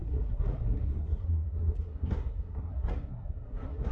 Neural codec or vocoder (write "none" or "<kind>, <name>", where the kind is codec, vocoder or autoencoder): codec, SNAC